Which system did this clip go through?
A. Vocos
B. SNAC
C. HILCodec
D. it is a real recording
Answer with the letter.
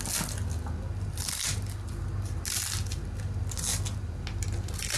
D